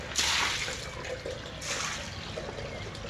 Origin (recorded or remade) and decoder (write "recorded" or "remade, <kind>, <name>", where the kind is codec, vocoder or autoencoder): recorded